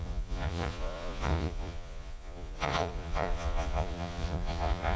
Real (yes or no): no